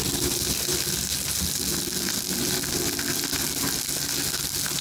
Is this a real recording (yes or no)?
yes